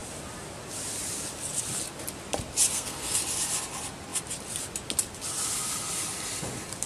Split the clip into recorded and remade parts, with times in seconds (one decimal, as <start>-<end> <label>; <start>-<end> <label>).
0.0-2.7 recorded; 2.7-3.2 remade; 3.2-6.9 recorded